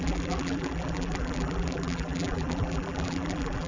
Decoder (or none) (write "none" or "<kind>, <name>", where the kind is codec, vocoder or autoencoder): vocoder, BigVGAN v2